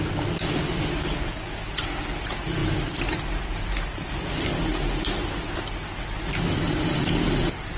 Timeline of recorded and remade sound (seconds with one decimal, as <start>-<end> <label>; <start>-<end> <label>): 0.0-7.8 recorded